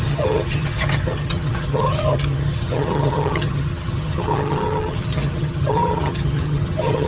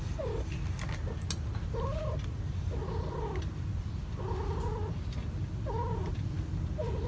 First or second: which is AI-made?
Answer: first